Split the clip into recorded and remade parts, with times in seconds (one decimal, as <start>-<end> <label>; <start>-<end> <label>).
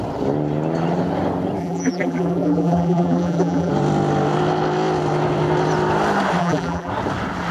0.0-1.6 recorded; 1.6-3.7 remade; 3.7-6.4 recorded; 6.4-6.9 remade; 6.9-7.5 recorded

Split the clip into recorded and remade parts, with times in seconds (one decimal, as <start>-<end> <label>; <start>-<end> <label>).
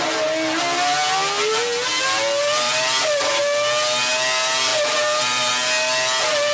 0.0-2.4 recorded; 2.4-3.4 remade; 3.4-6.5 recorded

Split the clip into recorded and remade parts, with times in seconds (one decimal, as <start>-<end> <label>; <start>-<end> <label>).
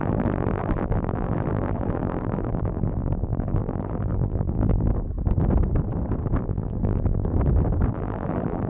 0.0-4.9 remade; 4.9-6.4 recorded; 6.4-7.3 remade; 7.3-7.9 recorded; 7.9-8.7 remade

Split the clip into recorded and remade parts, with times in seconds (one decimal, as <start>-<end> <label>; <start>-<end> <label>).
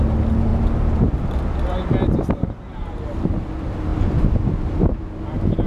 0.0-3.9 recorded; 3.9-4.8 remade; 4.8-5.7 recorded